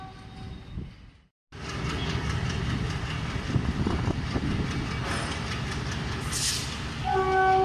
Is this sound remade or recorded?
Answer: recorded